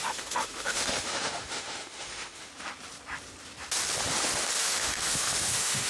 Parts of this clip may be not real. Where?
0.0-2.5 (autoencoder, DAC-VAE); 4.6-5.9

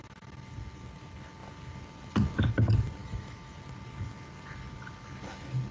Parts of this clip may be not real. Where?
3.0-3.6 (autoencoder, DAC-VAE)

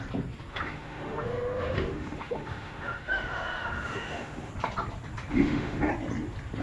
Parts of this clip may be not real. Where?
0.5-4.5 (autoencoder, DAC-VAE); 5.3-5.9